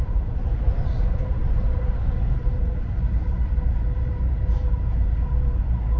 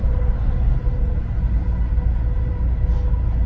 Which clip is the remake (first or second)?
first